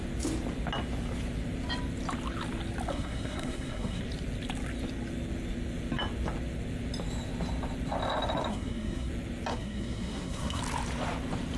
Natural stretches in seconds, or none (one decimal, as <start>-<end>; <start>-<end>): 0.0-2.9; 4.0-8.5; 9.1-9.5; 10.6-11.6